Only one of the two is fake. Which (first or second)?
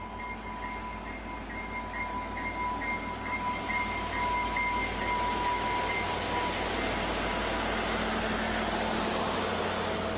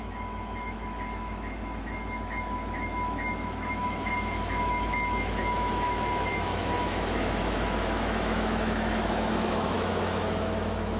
second